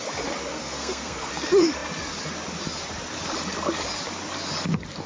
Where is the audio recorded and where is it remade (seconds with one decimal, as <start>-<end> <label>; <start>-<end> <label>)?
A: 0.0-0.5 recorded; 0.5-1.3 remade; 1.3-5.1 recorded